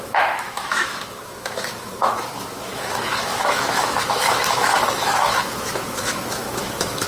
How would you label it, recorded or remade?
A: remade